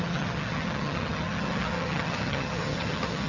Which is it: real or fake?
fake